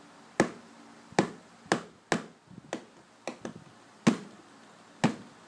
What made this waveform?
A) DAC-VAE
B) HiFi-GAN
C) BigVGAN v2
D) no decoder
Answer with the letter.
D